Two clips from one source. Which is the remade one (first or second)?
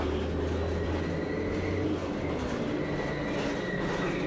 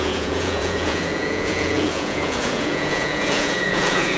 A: second